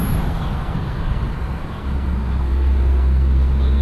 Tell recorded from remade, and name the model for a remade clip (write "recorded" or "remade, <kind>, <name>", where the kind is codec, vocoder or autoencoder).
remade, codec, SNAC